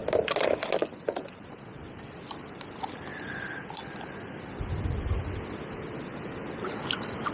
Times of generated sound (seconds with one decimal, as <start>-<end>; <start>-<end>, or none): 1.0-3.1